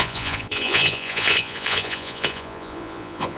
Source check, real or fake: fake